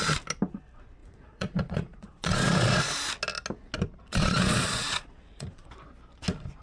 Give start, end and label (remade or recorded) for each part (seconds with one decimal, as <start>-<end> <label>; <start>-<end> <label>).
0.0-1.0 recorded; 1.0-2.9 remade; 2.9-4.1 recorded; 4.1-5.7 remade; 5.7-6.6 recorded